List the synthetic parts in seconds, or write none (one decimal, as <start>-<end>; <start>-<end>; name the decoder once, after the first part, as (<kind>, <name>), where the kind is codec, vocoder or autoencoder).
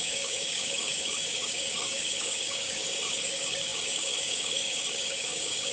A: 0.0-5.7 (codec, DAC)